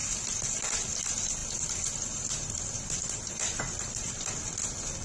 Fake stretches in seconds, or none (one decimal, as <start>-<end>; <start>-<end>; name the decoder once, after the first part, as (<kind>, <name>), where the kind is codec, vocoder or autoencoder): 1.4-4.4 (vocoder, BigVGAN v2)